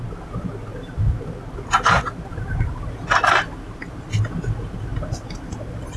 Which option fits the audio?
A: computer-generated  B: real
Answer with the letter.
B